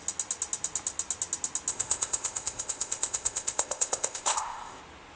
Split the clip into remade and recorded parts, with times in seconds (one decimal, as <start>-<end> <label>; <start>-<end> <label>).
0.0-1.7 recorded; 1.7-4.8 remade; 4.8-5.2 recorded